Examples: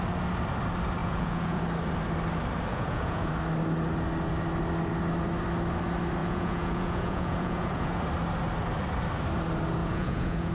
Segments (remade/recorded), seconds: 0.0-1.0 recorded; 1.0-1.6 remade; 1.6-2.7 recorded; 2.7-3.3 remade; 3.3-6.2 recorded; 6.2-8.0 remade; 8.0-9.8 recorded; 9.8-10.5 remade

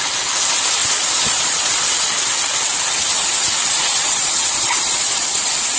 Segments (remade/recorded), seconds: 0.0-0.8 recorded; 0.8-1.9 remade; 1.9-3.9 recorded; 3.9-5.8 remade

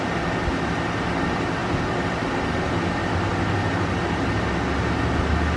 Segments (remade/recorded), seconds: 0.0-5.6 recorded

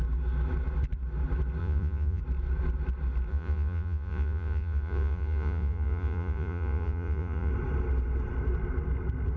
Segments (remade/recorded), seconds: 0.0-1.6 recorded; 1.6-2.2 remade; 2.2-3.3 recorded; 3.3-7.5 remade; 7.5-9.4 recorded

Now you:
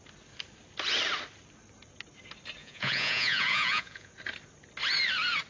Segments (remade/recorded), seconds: 0.0-2.6 recorded; 2.6-4.1 remade; 4.1-5.5 recorded